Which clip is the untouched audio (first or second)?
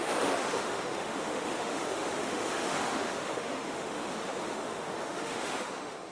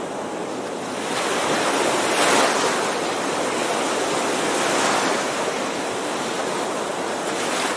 second